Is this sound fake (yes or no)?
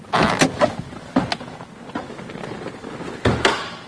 no